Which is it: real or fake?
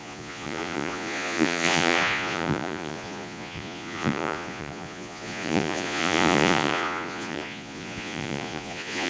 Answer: fake